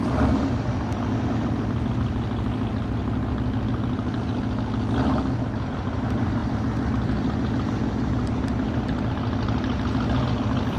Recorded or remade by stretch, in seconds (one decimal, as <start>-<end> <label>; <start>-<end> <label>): 0.0-10.8 recorded